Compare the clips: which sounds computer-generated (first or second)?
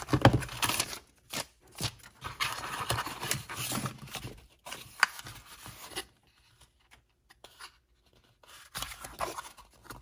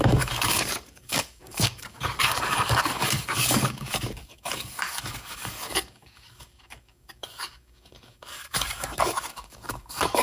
second